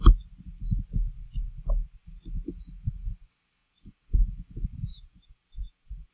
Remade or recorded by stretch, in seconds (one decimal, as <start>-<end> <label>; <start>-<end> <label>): 0.0-3.6 recorded; 3.6-4.3 remade; 4.3-4.9 recorded; 4.9-6.1 remade